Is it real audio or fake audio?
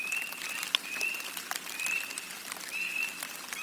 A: real